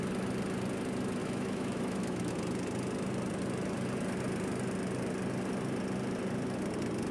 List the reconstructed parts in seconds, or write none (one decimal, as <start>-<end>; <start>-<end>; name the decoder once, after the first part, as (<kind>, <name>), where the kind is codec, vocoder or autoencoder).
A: 1.2-2.3 (autoencoder, DAC-VAE)

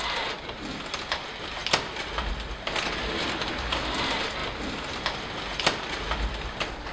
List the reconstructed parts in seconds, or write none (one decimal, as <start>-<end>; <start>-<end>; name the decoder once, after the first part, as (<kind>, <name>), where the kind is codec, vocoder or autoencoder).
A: none

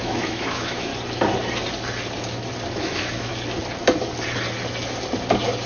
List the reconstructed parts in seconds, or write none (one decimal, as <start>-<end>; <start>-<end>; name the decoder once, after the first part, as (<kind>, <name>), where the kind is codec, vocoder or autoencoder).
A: 0.0-0.9 (autoencoder, DAC-VAE); 2.8-3.3

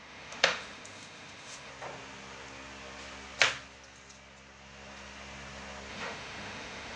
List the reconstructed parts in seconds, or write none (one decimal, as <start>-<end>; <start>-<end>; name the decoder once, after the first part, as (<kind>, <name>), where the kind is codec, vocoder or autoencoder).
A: 0.0-1.7 (autoencoder, DAC-VAE); 5.9-7.0